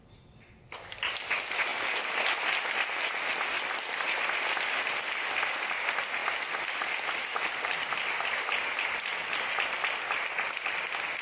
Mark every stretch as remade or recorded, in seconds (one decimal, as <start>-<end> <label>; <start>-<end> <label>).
0.0-11.2 recorded